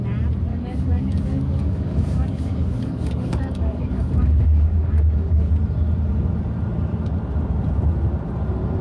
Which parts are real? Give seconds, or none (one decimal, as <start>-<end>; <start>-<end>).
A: 0.0-0.5; 5.5-8.8